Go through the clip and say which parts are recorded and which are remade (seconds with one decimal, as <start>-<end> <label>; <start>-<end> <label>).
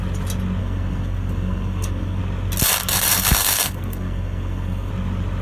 0.0-0.6 recorded; 0.6-2.2 remade; 2.2-3.1 recorded; 3.1-4.9 remade; 4.9-5.4 recorded